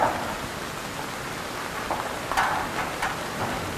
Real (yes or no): yes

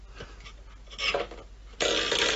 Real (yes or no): yes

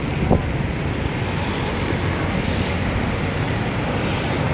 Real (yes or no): no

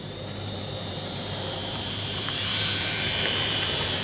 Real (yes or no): no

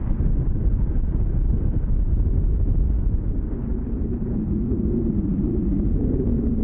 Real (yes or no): yes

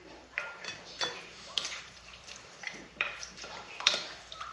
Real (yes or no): no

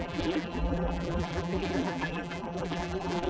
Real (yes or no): no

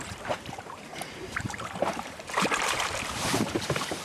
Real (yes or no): no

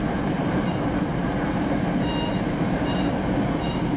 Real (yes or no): no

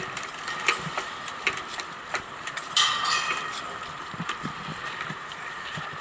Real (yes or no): no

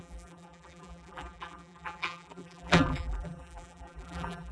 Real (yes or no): no